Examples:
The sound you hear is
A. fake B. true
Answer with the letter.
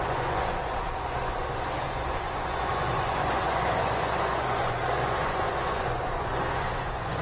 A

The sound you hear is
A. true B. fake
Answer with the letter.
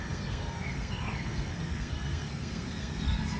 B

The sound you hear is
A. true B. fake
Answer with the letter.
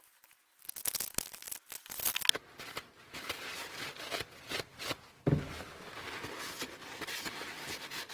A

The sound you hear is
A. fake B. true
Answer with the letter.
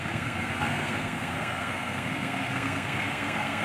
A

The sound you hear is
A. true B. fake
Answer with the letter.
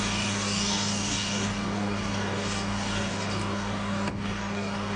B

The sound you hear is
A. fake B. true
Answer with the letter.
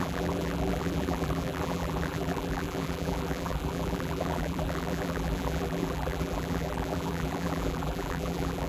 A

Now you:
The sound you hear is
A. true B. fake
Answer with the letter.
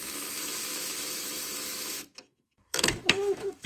B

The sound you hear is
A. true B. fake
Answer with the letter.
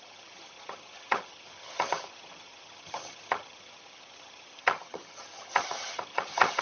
B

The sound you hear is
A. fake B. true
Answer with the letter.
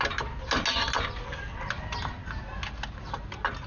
B